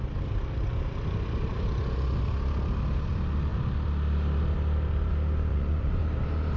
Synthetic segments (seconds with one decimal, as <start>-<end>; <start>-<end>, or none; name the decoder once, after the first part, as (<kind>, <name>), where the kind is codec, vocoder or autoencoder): 5.5-6.0 (vocoder, Vocos)